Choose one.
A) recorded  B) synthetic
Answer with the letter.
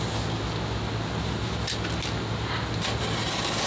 A